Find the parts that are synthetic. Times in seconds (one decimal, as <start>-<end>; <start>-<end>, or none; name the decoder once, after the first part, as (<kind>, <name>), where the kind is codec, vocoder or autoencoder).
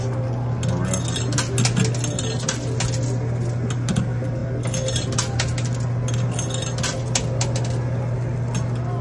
none